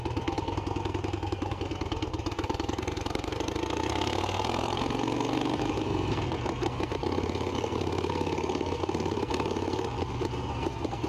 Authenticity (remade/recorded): remade